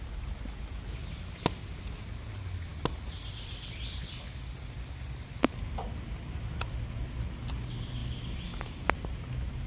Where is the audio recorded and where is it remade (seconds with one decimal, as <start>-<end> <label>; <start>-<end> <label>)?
0.0-2.7 recorded; 2.7-4.1 remade; 4.1-8.0 recorded; 8.0-8.6 remade; 8.6-9.7 recorded